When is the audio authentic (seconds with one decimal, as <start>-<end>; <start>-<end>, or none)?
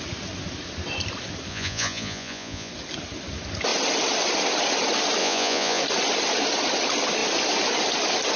0.0-1.5; 2.7-5.2; 5.8-8.4